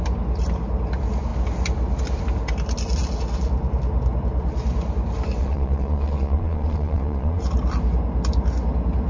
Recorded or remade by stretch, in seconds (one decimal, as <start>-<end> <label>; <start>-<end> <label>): 0.0-5.4 recorded; 5.4-7.4 remade; 7.4-9.1 recorded